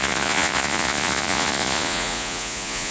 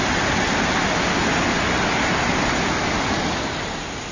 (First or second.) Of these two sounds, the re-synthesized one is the first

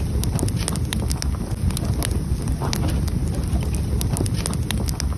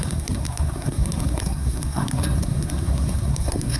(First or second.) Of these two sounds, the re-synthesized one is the second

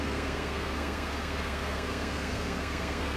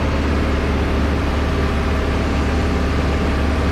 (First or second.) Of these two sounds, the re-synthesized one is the first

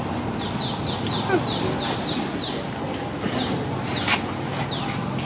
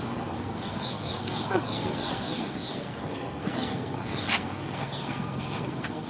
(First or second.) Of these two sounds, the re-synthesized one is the second